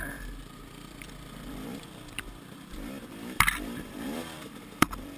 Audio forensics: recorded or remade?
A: remade